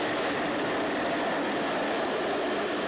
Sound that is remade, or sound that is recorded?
recorded